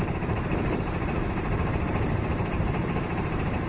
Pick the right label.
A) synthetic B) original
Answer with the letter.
A